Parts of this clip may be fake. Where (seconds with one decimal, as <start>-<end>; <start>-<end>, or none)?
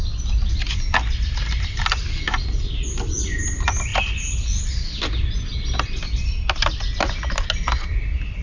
none